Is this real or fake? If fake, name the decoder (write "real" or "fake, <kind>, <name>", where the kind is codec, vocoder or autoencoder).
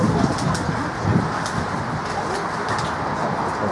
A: real